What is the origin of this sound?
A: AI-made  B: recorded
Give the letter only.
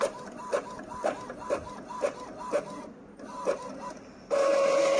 B